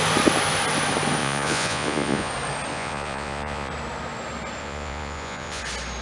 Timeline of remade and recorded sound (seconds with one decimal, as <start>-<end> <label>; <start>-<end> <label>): 0.0-1.2 recorded; 1.2-2.3 remade; 2.3-2.7 recorded; 2.7-3.7 remade; 3.7-4.6 recorded; 4.6-5.6 remade; 5.6-6.0 recorded